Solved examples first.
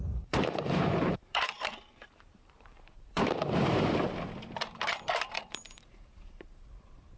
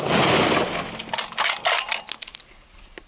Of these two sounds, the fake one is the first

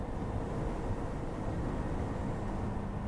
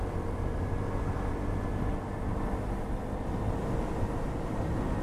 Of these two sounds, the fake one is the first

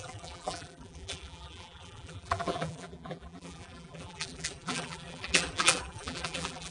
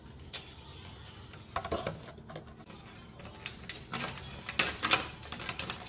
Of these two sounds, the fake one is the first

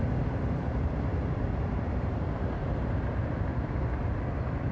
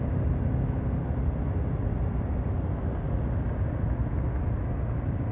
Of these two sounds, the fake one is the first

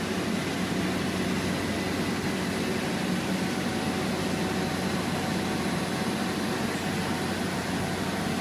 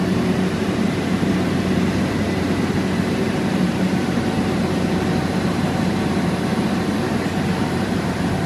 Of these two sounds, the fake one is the second